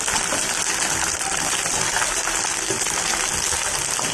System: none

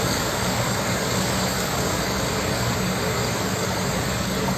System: codec, DAC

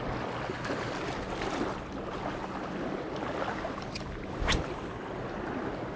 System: none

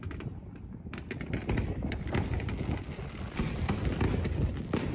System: none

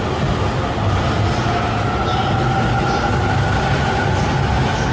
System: none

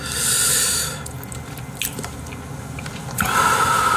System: none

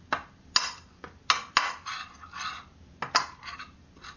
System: none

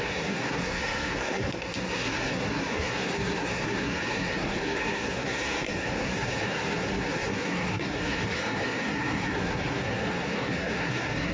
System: codec, SNAC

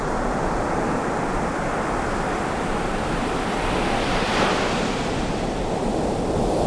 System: none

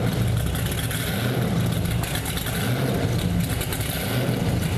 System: none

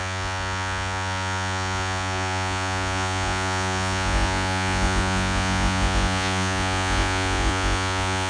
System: vocoder, Vocos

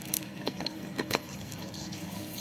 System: codec, SNAC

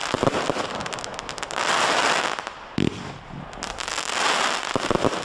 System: none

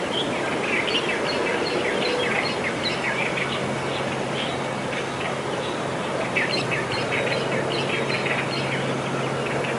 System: none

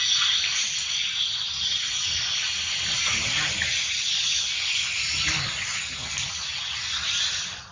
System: none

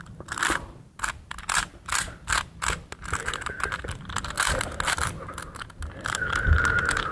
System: none